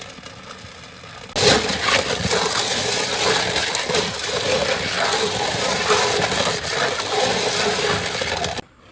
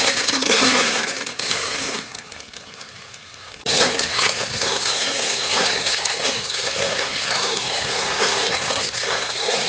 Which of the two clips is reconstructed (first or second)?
second